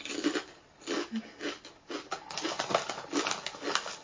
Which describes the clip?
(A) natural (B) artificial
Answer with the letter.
A